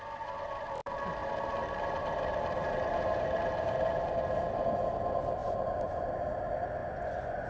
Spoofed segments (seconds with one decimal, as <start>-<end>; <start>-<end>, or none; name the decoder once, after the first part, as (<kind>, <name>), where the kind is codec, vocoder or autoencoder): 5.4-6.1 (vocoder, Vocos); 6.8-7.5